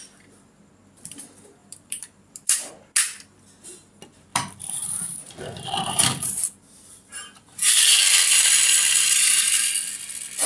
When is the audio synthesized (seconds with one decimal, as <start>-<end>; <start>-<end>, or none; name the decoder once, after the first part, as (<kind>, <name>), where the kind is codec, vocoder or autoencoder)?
1.6-2.7 (vocoder, BigVGAN v2); 4.3-9.6